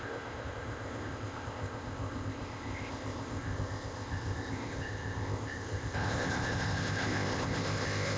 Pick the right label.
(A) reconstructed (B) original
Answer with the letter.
A